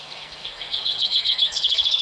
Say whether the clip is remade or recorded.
remade